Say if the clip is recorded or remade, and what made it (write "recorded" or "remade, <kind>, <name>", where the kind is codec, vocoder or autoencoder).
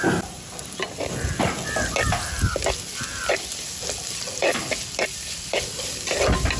recorded